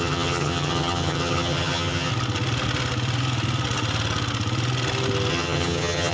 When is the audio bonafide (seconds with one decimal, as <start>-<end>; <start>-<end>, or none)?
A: 2.1-5.3